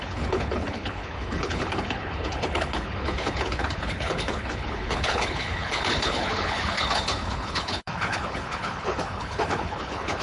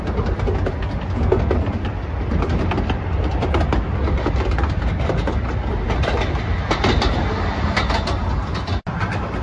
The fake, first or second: first